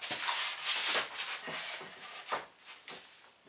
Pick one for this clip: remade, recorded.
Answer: recorded